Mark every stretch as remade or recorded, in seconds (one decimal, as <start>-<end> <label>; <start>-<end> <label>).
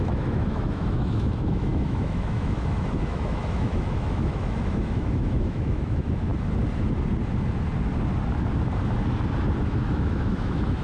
0.0-6.3 remade; 6.3-9.6 recorded; 9.6-10.8 remade